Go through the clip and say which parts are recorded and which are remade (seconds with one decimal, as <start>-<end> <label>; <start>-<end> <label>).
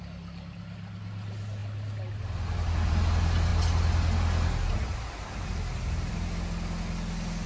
0.0-7.5 recorded